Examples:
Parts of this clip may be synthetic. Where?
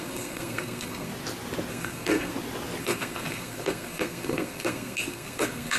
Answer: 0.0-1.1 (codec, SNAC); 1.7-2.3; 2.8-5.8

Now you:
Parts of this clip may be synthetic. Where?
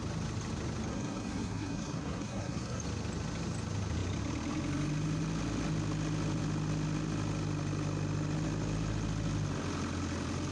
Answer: 0.9-2.8 (codec, SNAC)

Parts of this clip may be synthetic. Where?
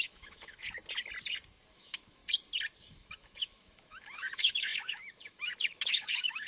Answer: 0.0-0.8 (autoencoder, DAC-VAE); 1.7-2.2; 2.9-6.5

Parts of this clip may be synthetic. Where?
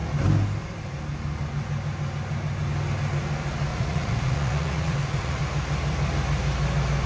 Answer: 3.7-5.4 (vocoder, Vocos)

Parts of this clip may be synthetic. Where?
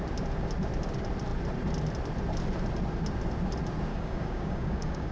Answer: 3.9-5.1 (codec, DAC)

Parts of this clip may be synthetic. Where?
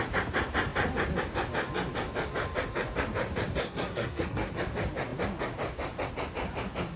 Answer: 3.6-4.5 (codec, SNAC)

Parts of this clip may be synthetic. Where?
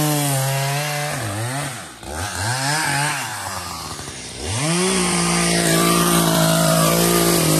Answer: 3.3-6.9 (vocoder, BigVGAN v2)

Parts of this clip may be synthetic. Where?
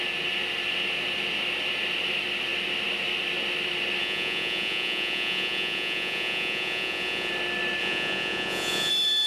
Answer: 4.0-7.3 (vocoder, Vocos); 7.8-8.9